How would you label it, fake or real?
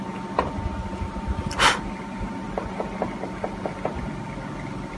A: real